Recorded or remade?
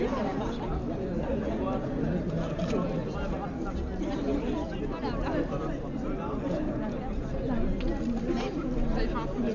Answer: recorded